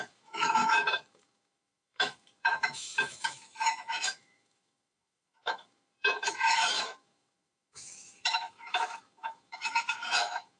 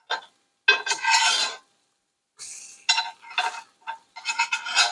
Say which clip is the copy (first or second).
first